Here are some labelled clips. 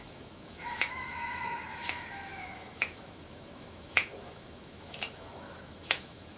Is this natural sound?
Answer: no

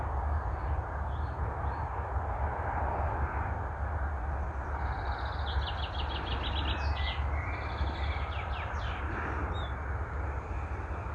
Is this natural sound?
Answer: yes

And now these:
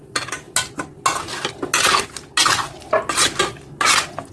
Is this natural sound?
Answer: yes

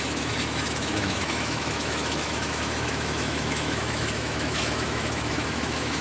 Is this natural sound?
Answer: no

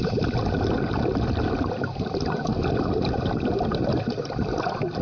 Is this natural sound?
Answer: yes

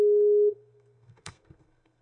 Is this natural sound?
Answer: no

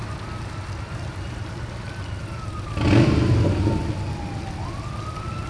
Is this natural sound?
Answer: yes